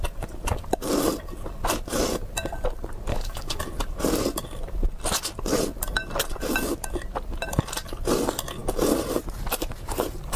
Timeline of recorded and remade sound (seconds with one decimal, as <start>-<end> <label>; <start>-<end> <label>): 0.0-3.1 recorded; 3.1-3.6 remade; 3.6-10.4 recorded